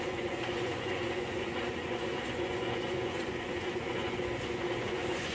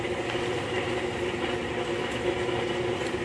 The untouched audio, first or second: second